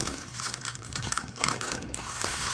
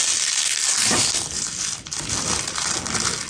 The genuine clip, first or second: second